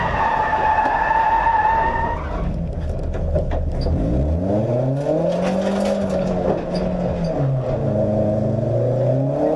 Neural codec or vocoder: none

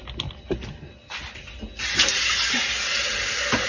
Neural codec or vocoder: none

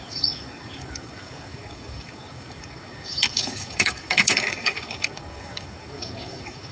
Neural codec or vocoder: codec, DAC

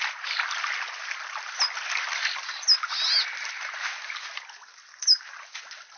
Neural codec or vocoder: none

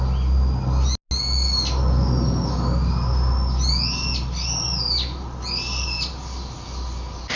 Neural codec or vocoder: none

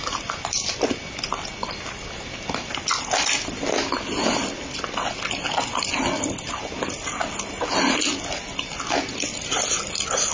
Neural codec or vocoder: none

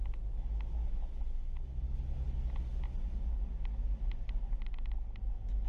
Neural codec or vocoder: none